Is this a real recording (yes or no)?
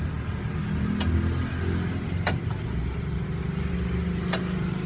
yes